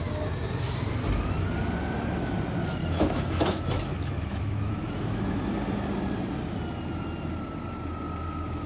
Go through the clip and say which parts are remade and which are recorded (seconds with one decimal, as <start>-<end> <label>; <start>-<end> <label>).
0.0-2.8 recorded; 2.8-5.3 remade; 5.3-8.7 recorded